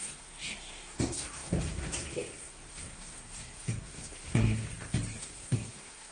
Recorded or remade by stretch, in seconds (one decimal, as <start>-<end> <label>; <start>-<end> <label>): 0.0-4.7 remade; 4.7-5.2 recorded; 5.2-6.1 remade